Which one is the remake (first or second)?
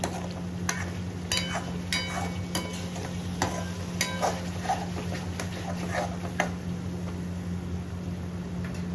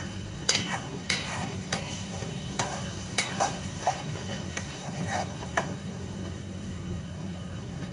second